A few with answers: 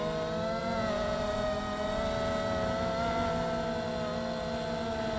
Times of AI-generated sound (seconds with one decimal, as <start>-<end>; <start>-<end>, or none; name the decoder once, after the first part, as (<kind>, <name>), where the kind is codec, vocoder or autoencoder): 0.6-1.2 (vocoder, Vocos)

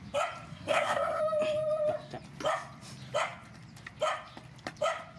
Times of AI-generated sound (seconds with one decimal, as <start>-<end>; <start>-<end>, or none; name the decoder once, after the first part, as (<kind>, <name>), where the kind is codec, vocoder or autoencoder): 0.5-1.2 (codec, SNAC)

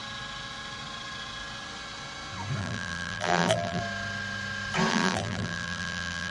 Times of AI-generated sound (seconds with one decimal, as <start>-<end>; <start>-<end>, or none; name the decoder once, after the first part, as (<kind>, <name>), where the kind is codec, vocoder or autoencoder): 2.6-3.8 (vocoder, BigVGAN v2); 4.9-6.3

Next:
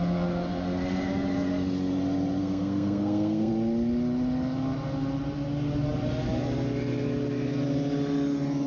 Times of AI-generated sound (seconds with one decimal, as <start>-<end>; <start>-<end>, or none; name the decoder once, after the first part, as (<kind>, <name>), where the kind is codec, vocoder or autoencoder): 2.4-3.5 (codec, SNAC)